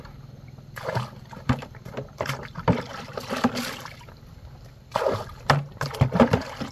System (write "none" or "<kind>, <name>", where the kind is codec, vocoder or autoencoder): none